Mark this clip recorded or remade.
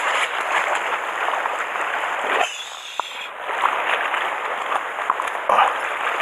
recorded